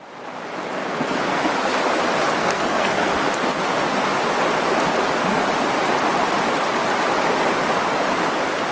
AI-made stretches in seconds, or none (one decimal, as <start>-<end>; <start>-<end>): 0.8-1.5; 2.4-3.1